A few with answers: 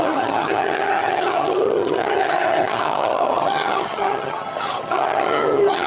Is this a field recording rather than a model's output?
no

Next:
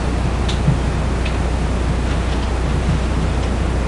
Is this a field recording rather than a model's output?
yes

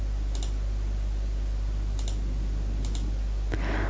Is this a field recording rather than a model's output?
yes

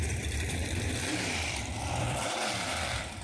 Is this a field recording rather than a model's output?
no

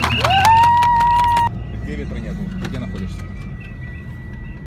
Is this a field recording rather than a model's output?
yes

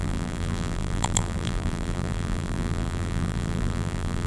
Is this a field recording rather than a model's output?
no